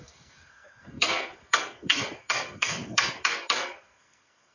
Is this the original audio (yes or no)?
no